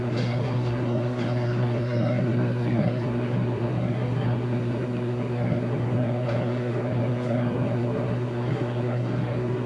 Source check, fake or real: fake